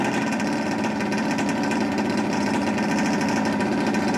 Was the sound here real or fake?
real